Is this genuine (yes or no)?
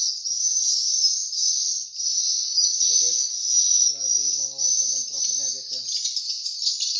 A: yes